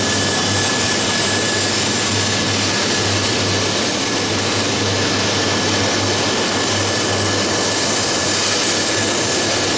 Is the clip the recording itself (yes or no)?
yes